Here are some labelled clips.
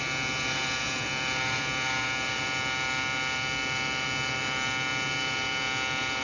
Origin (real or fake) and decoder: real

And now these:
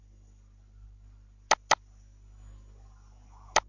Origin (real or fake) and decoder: real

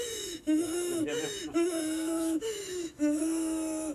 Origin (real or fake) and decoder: fake, autoencoder, DAC-VAE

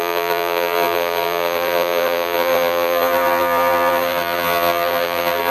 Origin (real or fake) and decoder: fake, vocoder, BigVGAN v2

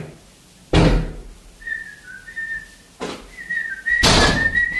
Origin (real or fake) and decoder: real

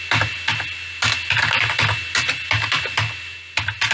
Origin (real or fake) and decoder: real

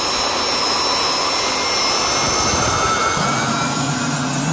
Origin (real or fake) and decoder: real